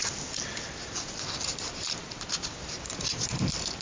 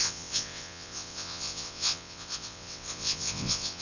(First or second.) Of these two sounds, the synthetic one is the second